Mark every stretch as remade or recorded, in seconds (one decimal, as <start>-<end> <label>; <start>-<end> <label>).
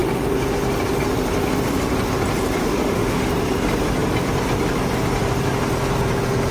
0.0-2.6 recorded; 2.6-3.3 remade; 3.3-6.5 recorded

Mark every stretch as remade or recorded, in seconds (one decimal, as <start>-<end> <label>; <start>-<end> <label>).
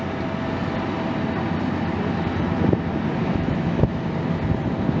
0.0-3.2 recorded; 3.2-4.0 remade; 4.0-5.0 recorded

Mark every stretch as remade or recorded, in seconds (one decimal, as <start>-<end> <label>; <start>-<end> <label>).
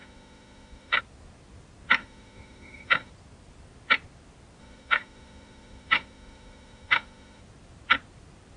0.0-1.0 remade; 1.0-2.0 recorded; 2.0-3.1 remade; 3.1-4.6 recorded; 4.6-7.4 remade; 7.4-8.6 recorded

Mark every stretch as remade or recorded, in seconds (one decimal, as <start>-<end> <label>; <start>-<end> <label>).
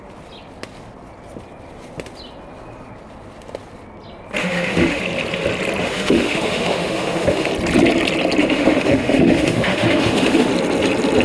0.0-4.4 recorded; 4.4-5.0 remade; 5.0-5.8 recorded; 5.8-7.5 remade; 7.5-8.4 recorded; 8.4-10.5 remade; 10.5-11.2 recorded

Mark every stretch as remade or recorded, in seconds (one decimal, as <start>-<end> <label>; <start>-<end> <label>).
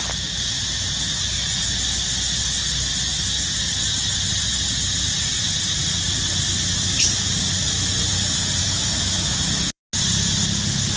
0.0-8.6 recorded; 8.6-9.8 remade; 9.8-11.0 recorded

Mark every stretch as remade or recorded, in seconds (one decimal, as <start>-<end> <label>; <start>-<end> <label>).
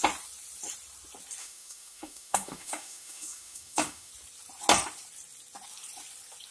0.0-1.4 recorded; 1.4-4.1 remade; 4.1-6.5 recorded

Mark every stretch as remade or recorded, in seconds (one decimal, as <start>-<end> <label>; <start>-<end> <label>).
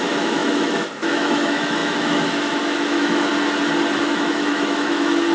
0.0-3.3 remade; 3.3-4.0 recorded; 4.0-5.3 remade